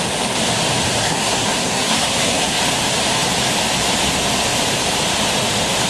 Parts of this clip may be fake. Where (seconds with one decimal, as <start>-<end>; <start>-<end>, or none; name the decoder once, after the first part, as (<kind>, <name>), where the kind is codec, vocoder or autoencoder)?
1.0-2.6 (codec, SNAC)